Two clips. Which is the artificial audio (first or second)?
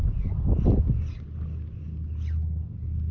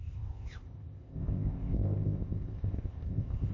second